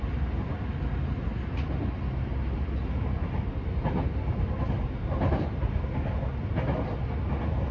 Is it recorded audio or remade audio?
recorded